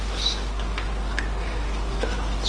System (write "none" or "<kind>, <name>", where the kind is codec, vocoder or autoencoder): none